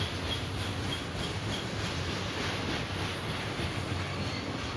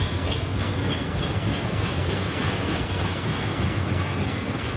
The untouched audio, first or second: first